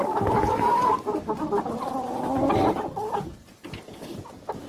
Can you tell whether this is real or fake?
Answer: real